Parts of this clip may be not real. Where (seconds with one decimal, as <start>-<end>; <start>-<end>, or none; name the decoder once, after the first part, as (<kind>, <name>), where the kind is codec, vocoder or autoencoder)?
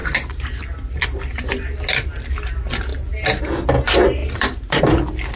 0.0-0.6 (vocoder, BigVGAN v2); 4.2-4.8